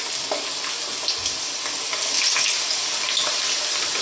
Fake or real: real